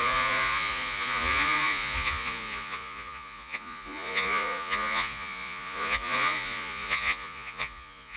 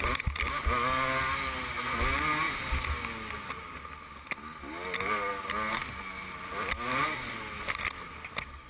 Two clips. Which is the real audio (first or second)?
second